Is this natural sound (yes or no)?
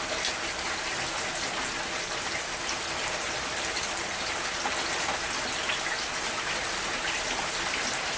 yes